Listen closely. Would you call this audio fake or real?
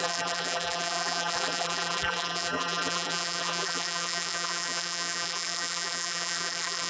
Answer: fake